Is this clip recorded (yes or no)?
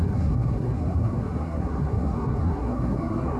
no